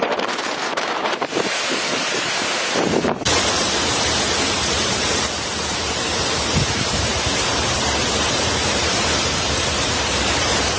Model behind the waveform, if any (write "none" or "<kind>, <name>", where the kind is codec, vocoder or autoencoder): vocoder, BigVGAN v2